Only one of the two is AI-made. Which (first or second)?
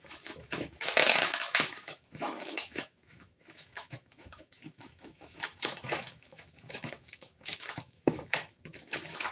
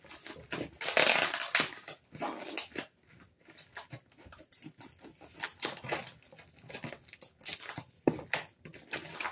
first